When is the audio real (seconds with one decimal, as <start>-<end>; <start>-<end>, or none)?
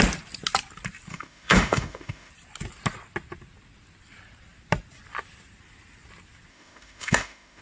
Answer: 0.0-1.1; 2.3-6.5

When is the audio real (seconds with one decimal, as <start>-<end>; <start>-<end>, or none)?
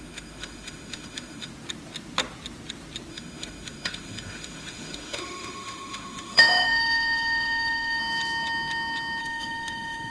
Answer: 1.5-3.1; 8.0-9.2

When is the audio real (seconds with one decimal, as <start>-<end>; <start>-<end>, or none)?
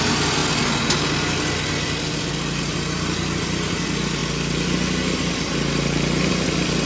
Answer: 0.0-6.9